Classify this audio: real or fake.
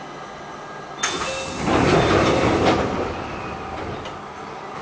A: real